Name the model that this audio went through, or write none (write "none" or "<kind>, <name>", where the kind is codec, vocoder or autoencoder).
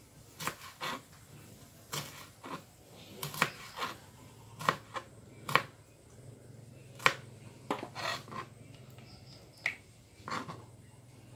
none